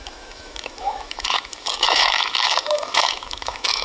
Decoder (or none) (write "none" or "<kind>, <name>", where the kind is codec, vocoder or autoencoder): autoencoder, DAC-VAE